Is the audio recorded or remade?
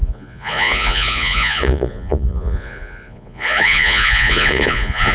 remade